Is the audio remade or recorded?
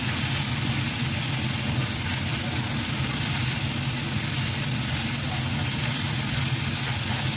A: recorded